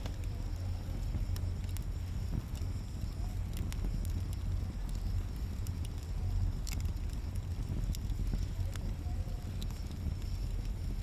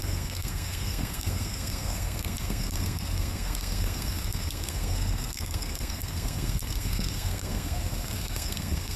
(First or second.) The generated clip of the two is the second